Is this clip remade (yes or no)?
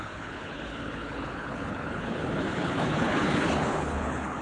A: yes